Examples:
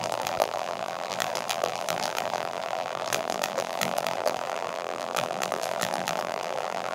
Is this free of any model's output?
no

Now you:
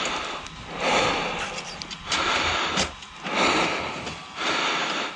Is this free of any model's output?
yes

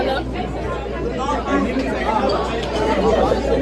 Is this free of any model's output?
yes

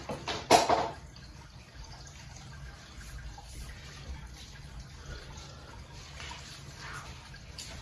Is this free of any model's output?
yes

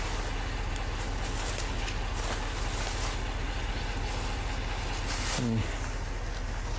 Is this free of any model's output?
yes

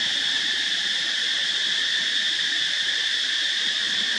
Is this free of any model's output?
no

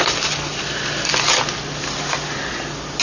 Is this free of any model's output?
yes